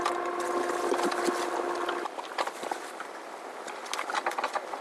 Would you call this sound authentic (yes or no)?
yes